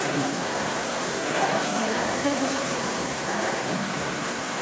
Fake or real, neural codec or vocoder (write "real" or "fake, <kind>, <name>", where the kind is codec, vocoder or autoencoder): fake, codec, SNAC